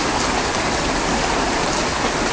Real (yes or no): yes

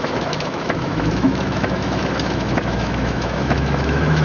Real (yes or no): no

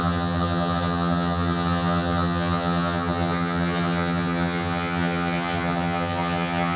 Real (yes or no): no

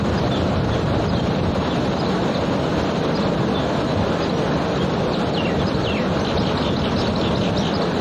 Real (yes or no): yes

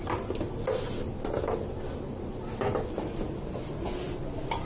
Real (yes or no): yes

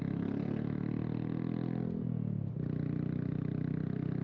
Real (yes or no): yes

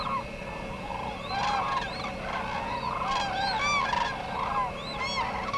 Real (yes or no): yes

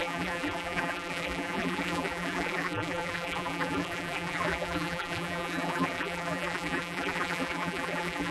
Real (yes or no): no